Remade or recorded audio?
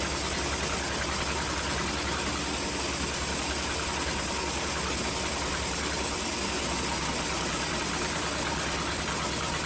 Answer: recorded